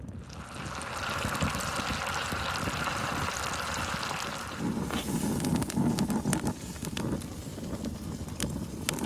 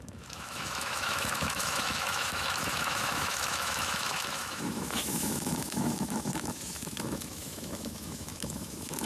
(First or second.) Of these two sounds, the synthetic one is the second